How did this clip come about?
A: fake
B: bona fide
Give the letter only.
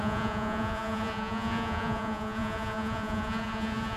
A